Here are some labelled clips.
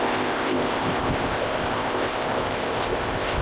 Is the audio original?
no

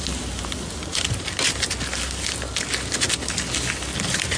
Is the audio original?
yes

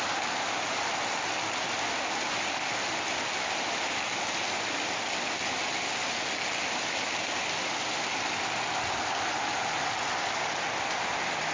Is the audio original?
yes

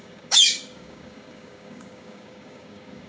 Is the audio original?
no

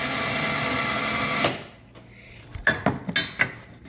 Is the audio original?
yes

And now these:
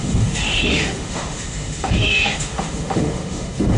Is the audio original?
no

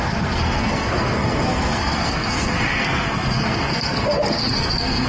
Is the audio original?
no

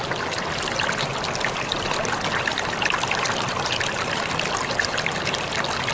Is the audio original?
yes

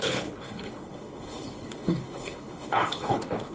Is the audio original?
no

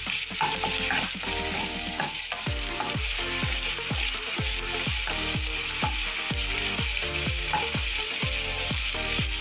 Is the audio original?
yes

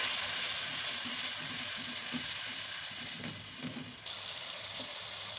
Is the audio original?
yes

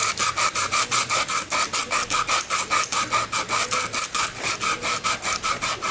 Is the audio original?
yes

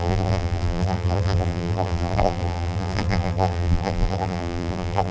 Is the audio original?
no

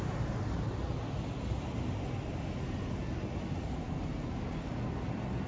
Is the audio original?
yes